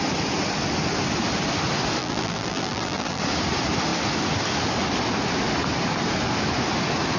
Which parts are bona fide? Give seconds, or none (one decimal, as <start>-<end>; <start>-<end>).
0.0-2.0; 3.2-7.2